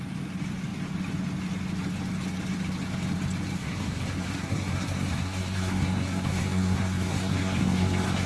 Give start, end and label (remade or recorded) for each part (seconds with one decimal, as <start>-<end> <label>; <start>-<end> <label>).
0.0-3.6 recorded; 3.6-8.3 remade